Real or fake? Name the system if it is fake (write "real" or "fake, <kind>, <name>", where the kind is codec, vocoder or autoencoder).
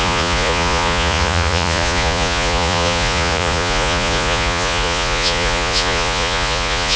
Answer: fake, vocoder, Vocos